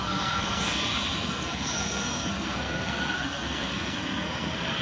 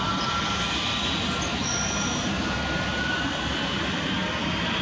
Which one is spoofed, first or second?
first